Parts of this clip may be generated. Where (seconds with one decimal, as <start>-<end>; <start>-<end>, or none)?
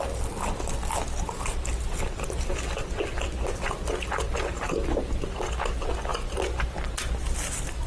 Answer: none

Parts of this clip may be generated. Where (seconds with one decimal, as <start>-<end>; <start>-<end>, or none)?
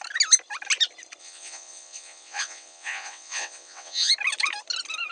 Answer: 1.2-4.1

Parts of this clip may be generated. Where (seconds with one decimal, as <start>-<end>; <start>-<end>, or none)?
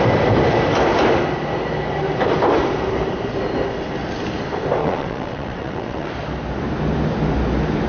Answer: 4.8-6.1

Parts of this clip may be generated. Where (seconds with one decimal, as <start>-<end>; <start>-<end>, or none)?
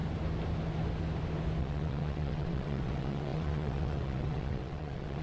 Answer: 1.6-5.2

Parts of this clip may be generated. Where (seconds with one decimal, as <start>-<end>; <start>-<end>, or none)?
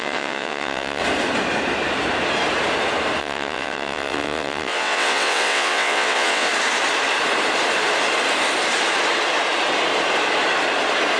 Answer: 0.0-1.0; 3.2-6.5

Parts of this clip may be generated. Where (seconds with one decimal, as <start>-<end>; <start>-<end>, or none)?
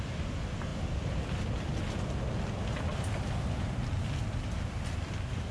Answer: none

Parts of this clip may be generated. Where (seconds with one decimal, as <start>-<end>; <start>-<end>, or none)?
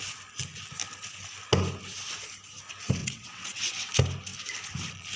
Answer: 3.0-3.9